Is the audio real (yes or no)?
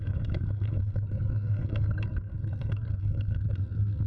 no